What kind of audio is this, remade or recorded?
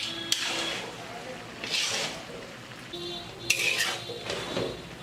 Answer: recorded